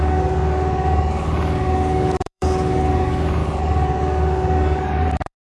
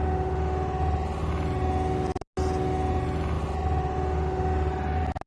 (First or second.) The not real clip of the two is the first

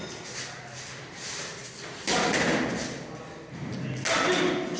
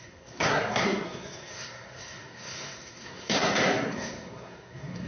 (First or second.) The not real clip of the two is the second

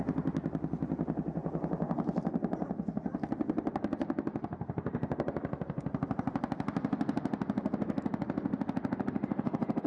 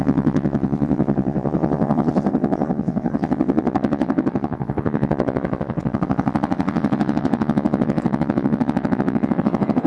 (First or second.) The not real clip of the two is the second